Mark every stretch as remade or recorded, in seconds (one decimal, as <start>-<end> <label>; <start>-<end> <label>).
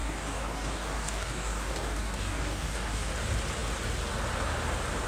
0.0-3.1 remade; 3.1-5.1 recorded